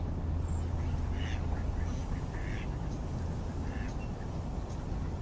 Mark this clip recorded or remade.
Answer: recorded